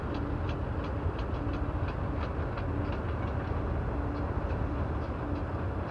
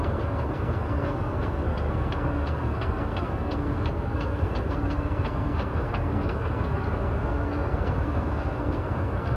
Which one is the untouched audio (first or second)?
first